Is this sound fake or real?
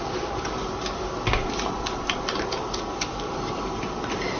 real